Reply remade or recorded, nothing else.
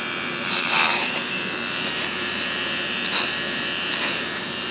remade